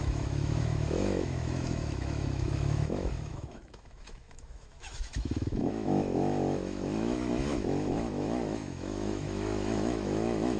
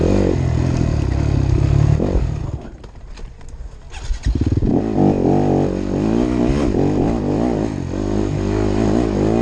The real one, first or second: second